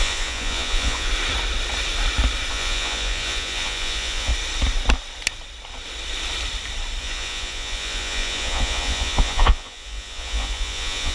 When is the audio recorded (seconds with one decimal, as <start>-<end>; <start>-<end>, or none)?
1.1-2.5; 4.3-7.0